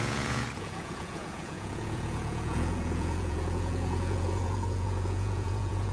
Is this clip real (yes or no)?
no